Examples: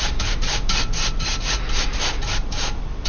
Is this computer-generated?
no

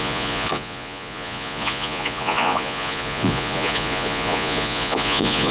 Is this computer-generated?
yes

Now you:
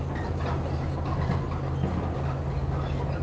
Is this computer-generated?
no